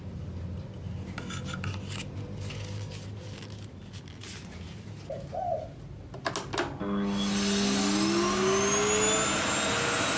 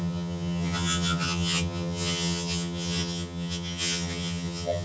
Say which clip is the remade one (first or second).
second